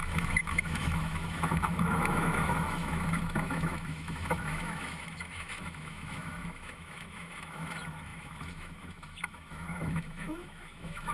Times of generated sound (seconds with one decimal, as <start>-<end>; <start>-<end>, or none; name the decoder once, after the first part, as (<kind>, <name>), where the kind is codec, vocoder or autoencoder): 0.0-11.1 (autoencoder, DAC-VAE)